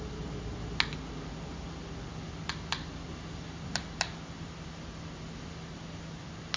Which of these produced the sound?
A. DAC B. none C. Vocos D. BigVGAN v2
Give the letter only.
B